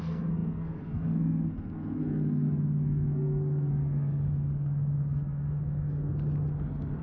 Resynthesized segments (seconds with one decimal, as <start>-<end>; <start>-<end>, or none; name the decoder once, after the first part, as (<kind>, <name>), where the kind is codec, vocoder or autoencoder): 0.0-6.1 (codec, SNAC)